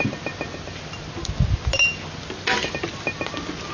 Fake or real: real